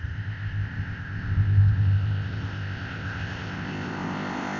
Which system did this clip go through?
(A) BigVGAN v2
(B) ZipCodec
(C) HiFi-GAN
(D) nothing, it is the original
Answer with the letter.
B